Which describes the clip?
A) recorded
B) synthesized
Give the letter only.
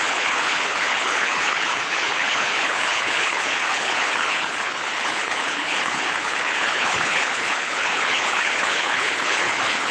B